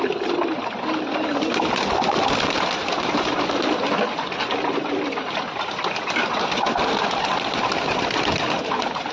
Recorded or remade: recorded